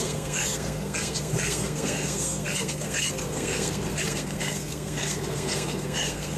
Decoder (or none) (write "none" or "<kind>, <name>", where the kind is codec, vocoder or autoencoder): codec, SNAC